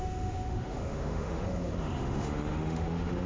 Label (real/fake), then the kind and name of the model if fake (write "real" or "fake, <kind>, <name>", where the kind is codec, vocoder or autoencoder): fake, autoencoder, DAC-VAE